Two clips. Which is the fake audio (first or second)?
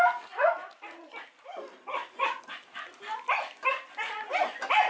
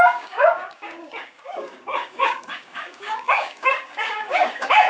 second